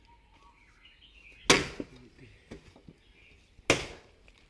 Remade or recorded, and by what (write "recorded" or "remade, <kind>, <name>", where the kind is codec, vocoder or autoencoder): recorded